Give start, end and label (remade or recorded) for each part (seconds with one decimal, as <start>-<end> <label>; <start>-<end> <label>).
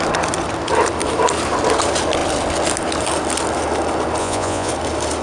0.0-4.2 recorded; 4.2-4.7 remade; 4.7-5.2 recorded